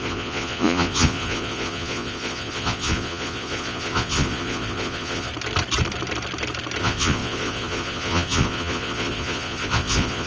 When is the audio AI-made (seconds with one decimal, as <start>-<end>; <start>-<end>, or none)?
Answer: 0.0-5.3; 6.8-10.3